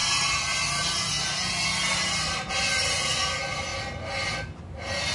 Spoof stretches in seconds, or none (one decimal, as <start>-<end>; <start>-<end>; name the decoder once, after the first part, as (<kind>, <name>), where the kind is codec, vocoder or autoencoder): none